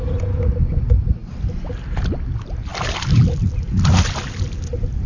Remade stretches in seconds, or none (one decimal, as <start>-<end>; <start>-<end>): none